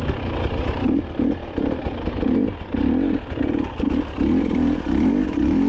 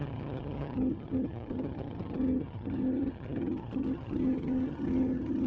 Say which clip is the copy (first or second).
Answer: second